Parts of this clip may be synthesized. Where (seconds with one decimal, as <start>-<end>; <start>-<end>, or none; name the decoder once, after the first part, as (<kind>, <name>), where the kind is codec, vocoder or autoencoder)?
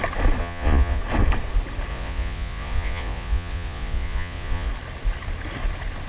0.4-1.0 (vocoder, Vocos); 1.9-4.7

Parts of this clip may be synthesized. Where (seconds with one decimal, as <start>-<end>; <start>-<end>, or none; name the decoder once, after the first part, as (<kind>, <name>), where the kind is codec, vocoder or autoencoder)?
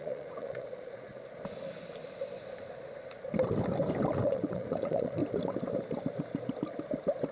0.0-1.1 (vocoder, Vocos); 4.1-5.2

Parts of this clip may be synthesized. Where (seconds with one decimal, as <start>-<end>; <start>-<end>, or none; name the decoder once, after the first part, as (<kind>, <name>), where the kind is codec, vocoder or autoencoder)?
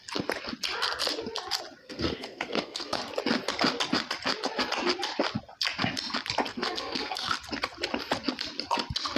1.8-3.0 (codec, SNAC); 6.5-7.3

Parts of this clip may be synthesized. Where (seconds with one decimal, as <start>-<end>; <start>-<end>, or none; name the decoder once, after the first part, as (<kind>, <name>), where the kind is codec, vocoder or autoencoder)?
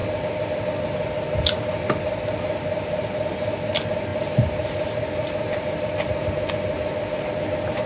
none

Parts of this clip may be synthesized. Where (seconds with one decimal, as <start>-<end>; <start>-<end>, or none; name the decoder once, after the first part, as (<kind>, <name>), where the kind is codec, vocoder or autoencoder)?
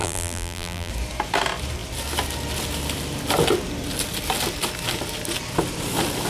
0.0-0.9 (vocoder, BigVGAN v2)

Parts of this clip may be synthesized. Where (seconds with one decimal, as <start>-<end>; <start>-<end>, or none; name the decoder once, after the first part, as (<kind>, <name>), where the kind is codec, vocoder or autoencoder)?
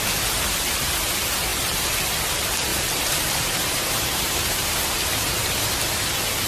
0.5-1.1 (vocoder, BigVGAN v2); 2.7-4.9